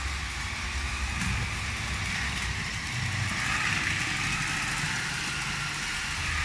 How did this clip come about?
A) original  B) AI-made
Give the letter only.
A